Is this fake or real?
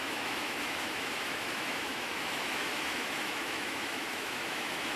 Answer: fake